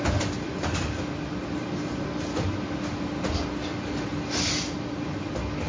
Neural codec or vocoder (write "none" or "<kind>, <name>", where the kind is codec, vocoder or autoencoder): none